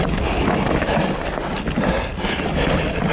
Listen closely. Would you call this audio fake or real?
real